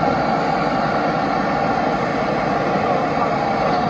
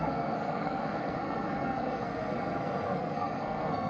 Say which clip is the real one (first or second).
first